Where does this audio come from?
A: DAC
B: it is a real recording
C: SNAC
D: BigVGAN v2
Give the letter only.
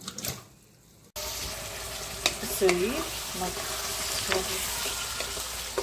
B